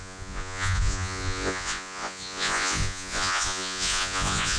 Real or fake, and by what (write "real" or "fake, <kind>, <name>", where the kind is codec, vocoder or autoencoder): fake, vocoder, Vocos